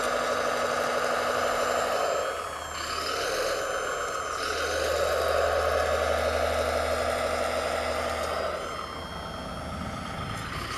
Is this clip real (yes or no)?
yes